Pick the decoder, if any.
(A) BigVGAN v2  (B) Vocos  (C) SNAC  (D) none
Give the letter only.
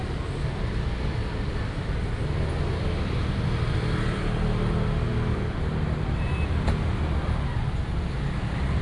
D